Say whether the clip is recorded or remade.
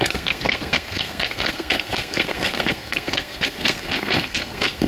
remade